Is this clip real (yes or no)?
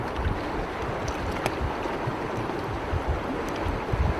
yes